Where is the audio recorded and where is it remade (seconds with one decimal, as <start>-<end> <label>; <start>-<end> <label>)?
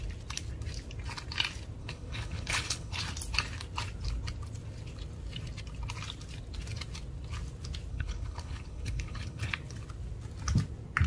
0.0-1.8 recorded; 1.8-3.0 remade; 3.0-7.9 recorded; 7.9-9.5 remade; 9.5-11.1 recorded